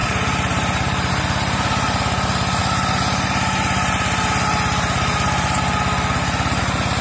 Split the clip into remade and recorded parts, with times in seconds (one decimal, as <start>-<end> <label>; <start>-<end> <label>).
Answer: 0.0-1.1 remade; 1.1-7.0 recorded